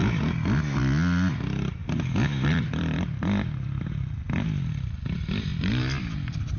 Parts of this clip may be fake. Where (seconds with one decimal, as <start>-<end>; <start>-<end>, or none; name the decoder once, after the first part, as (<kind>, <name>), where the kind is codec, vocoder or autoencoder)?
1.8-3.8 (vocoder, BigVGAN v2); 5.5-6.6